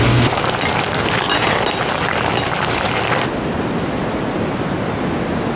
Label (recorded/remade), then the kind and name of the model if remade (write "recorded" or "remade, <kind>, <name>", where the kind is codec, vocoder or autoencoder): recorded